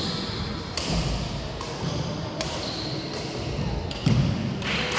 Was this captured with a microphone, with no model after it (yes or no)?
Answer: yes